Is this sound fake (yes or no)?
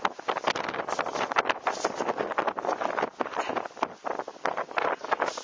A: no